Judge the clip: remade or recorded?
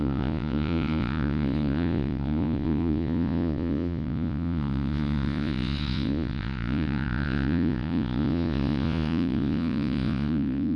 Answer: remade